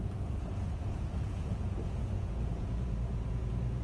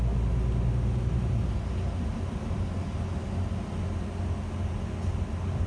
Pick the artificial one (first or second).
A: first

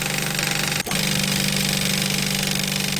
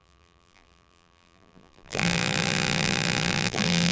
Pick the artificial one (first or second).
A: second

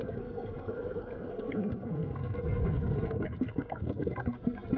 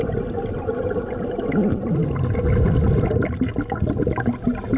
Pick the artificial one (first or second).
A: first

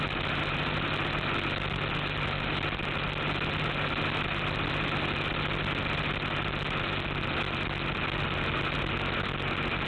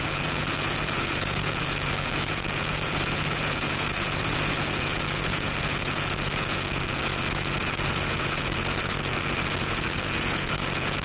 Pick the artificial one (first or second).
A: second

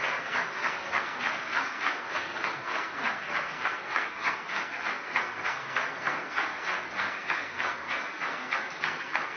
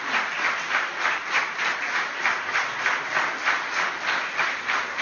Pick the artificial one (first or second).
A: first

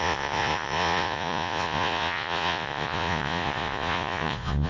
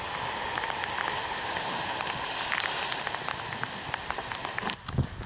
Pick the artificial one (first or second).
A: first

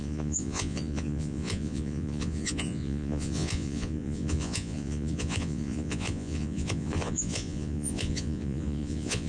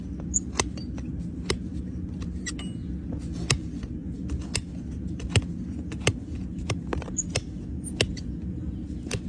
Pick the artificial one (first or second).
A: first